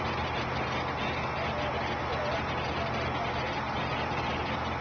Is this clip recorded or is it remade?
recorded